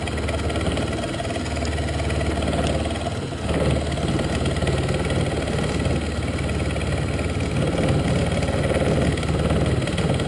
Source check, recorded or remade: recorded